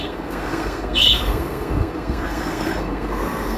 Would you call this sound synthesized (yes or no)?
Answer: yes